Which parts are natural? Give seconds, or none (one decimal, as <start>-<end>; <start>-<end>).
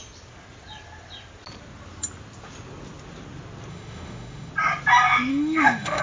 0.0-3.7; 4.5-5.3